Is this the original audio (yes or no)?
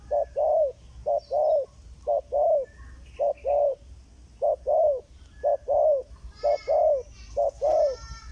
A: yes